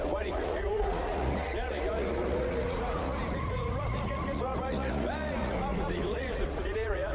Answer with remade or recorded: remade